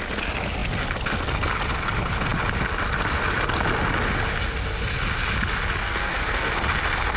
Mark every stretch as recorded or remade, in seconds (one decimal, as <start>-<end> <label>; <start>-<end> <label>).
0.0-5.8 recorded; 5.8-6.5 remade; 6.5-7.2 recorded

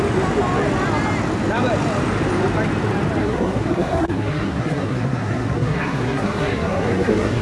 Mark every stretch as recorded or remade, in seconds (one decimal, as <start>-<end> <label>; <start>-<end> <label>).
0.0-3.2 recorded; 3.2-7.4 remade